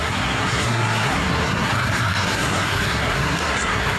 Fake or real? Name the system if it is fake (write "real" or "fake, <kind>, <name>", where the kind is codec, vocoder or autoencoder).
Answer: fake, codec, SNAC